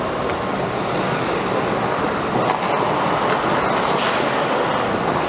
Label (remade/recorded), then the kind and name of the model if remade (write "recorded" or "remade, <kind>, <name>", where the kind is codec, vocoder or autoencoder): recorded